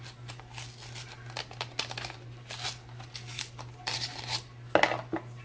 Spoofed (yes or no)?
no